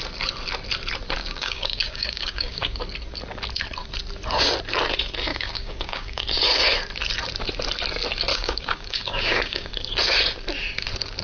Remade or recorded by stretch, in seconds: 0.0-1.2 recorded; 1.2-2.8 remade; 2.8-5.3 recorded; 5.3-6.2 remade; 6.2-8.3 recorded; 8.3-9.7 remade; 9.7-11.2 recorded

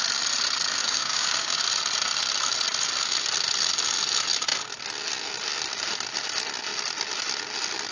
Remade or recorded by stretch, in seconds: 0.0-0.8 recorded; 0.8-1.6 remade; 1.6-7.9 recorded